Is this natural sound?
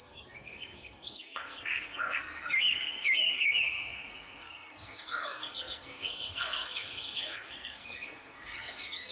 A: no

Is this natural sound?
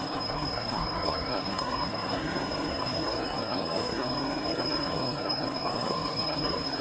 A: no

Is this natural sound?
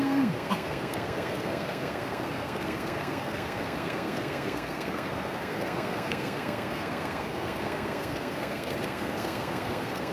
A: no